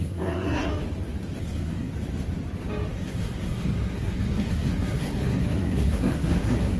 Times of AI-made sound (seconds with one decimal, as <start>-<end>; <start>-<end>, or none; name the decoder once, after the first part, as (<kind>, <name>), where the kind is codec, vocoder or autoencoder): 0.0-0.7 (codec, SNAC); 1.4-1.9; 2.9-6.8